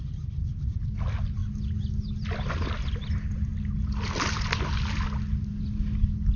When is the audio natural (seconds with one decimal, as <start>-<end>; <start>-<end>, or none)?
0.0-6.4

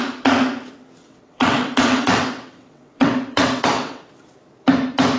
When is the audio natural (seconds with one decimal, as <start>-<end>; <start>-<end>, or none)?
0.0-1.0; 4.1-5.2

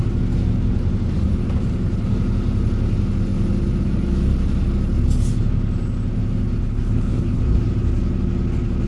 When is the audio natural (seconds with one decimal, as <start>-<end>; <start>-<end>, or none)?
0.0-6.6; 7.4-8.9

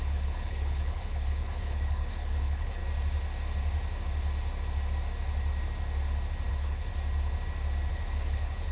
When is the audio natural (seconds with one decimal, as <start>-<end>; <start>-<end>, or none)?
2.8-6.5; 6.9-7.9

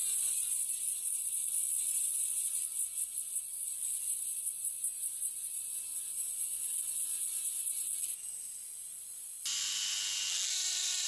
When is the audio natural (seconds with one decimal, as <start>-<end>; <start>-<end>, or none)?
2.7-4.0; 5.9-11.1

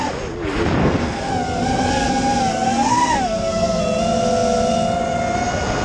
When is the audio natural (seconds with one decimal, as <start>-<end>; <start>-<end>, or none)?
0.0-0.8; 1.3-2.5; 3.8-5.8

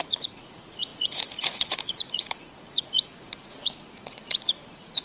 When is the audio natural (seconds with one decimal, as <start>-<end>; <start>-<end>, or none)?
none